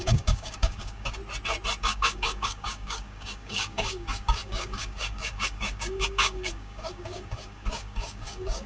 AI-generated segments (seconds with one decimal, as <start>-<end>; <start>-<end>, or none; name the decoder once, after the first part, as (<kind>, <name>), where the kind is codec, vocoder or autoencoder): 0.0-1.2 (codec, DAC); 1.8-8.7